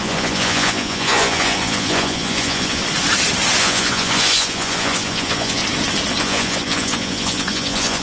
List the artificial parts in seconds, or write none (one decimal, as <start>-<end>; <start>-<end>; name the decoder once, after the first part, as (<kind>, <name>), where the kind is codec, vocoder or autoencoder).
0.0-2.8 (vocoder, Vocos); 3.6-5.6; 6.2-8.0